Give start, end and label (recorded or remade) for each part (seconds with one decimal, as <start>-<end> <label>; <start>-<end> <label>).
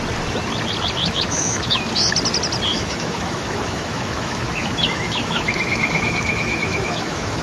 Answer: 0.0-1.0 recorded; 1.0-1.9 remade; 1.9-2.7 recorded; 2.7-7.4 remade